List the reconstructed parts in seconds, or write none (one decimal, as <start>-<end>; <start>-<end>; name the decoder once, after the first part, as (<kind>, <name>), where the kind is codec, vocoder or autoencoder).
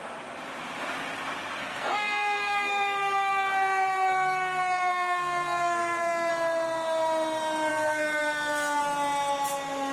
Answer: 1.6-6.3 (codec, SNAC); 7.7-8.8